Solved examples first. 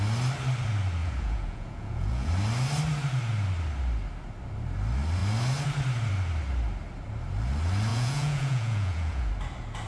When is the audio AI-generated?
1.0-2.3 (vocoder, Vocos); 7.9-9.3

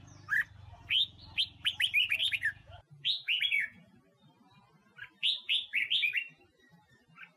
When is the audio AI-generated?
2.2-4.0 (vocoder, Vocos)

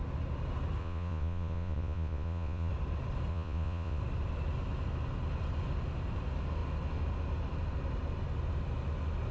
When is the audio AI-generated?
0.8-2.7 (vocoder, Vocos); 3.3-4.0

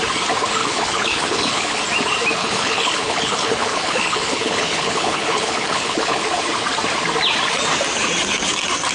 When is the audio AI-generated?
0.6-1.8 (codec, HILCodec); 2.4-6.2

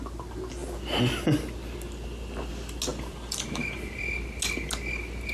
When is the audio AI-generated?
2.9-3.9 (vocoder, BigVGAN v2)

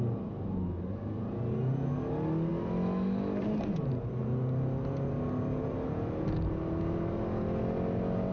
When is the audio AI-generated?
none